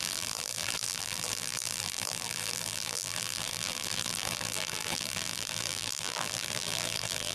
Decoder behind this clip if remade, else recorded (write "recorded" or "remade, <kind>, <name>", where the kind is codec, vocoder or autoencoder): remade, vocoder, BigVGAN v2